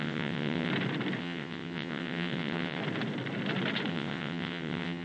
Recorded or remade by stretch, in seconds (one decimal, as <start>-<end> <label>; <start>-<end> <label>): 0.0-0.7 remade; 0.7-1.2 recorded; 1.2-2.8 remade; 2.8-3.9 recorded; 3.9-5.0 remade